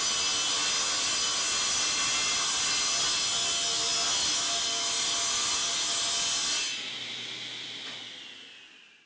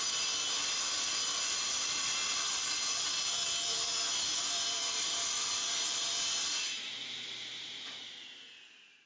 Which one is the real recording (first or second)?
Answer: first